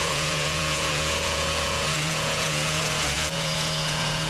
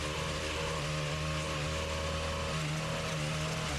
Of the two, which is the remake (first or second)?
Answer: first